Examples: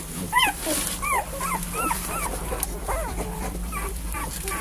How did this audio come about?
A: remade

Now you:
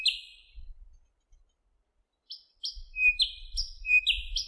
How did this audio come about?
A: remade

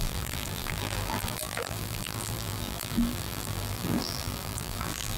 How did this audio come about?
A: remade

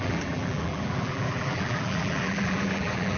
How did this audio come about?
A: remade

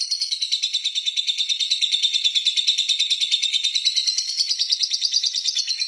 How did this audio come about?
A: recorded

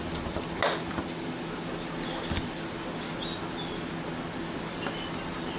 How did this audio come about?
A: recorded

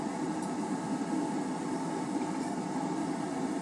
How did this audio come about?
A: remade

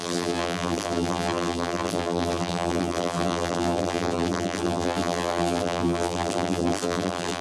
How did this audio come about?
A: remade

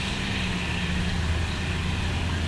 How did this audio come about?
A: recorded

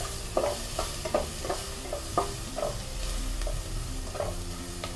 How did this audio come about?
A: recorded